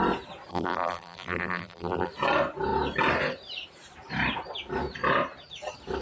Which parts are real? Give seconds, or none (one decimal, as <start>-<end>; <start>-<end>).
0.0-0.5; 2.1-6.0